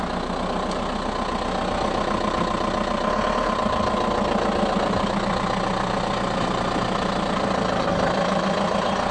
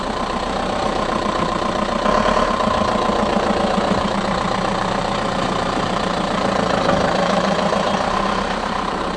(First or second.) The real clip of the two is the first